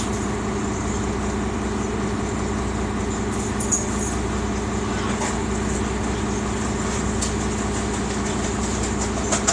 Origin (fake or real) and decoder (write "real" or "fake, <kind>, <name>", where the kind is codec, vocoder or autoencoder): real